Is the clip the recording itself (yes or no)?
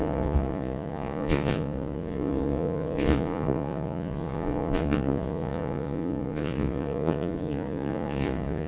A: no